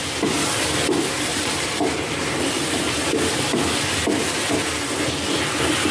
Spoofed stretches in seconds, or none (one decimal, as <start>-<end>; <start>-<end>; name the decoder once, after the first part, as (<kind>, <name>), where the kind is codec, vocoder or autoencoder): 1.3-3.6 (vocoder, BigVGAN v2)